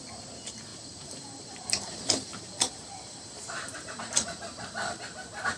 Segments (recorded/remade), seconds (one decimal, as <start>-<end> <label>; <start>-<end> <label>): 0.0-0.7 recorded; 0.7-4.1 remade; 4.1-5.6 recorded